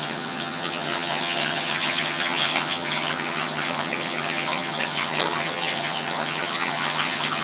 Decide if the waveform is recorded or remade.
remade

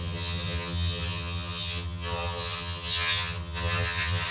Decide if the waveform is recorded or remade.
remade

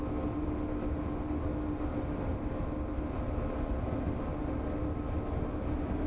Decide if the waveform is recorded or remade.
recorded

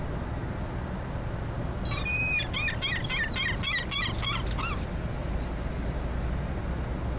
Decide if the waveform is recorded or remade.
recorded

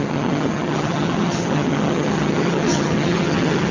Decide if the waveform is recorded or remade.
remade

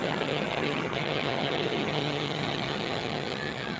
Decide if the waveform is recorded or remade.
remade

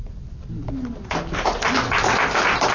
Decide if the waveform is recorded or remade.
recorded